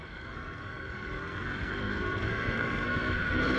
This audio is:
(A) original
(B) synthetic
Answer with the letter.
B